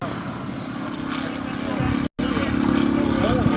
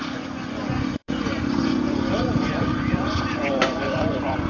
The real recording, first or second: first